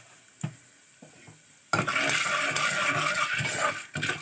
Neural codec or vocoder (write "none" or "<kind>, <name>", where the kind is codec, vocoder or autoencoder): none